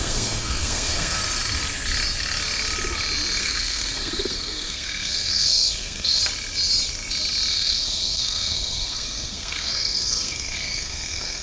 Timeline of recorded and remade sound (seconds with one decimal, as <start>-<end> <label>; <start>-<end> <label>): 0.0-1.2 remade; 1.2-3.4 recorded; 3.4-6.2 remade; 6.2-7.5 recorded; 7.5-11.4 remade